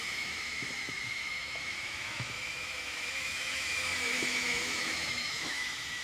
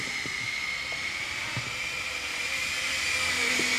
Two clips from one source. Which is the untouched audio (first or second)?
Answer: second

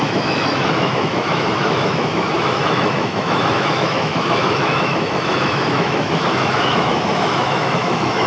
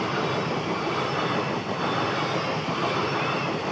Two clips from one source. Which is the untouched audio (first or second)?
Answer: second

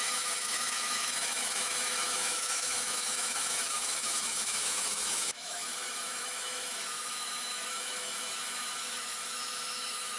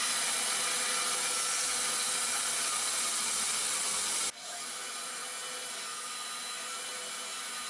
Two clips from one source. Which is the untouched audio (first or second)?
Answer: second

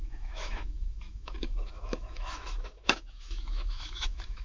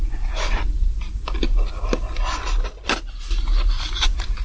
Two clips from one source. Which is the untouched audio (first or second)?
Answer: second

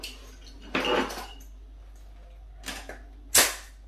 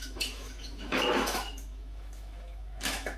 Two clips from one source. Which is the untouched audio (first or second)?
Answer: first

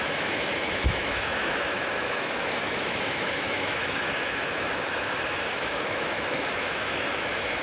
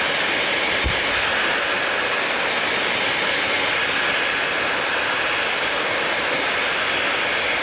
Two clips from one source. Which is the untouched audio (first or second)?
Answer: second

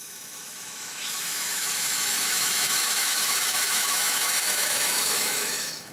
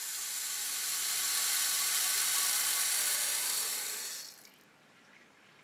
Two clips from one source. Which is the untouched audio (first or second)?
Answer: second